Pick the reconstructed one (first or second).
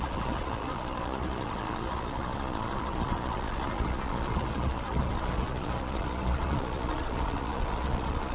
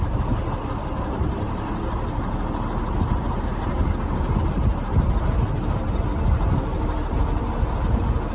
first